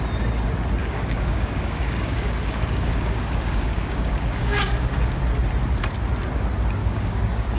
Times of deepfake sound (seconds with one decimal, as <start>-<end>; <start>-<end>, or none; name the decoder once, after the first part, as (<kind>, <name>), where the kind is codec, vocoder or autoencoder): 0.8-5.2 (codec, DAC); 6.8-7.6

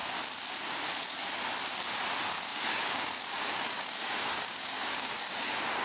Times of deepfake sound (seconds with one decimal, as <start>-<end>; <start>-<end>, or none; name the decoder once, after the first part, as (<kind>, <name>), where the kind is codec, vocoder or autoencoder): 2.5-5.2 (codec, DAC)

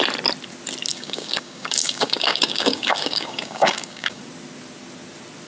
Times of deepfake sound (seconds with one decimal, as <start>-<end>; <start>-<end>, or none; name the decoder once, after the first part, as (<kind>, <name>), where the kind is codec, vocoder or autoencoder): 0.9-4.2 (codec, DAC)

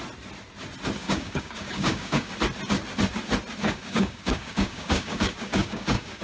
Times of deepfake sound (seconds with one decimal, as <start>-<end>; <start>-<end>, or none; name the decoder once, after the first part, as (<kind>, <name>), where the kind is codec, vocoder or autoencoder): 1.0-2.3 (codec, DAC); 3.6-6.2

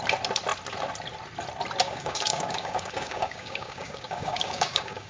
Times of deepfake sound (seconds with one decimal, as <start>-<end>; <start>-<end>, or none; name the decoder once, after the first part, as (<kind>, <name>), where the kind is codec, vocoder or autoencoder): 1.8-5.1 (codec, DAC)

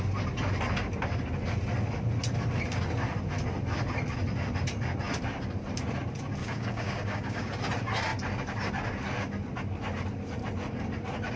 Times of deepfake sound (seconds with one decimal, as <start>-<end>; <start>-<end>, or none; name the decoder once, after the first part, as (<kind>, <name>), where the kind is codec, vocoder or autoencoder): 6.4-7.5 (codec, DAC)